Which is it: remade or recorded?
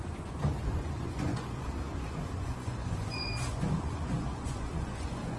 remade